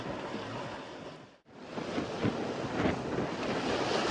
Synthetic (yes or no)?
no